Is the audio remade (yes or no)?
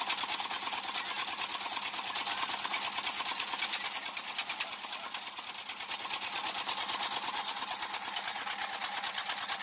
no